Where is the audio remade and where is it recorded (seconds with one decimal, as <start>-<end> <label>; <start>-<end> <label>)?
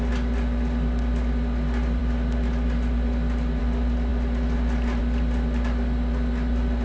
0.0-6.8 recorded